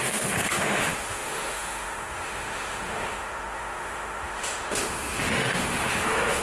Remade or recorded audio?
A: remade